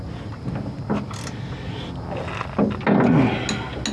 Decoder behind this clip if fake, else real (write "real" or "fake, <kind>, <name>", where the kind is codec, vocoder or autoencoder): real